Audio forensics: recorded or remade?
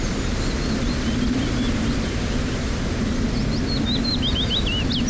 recorded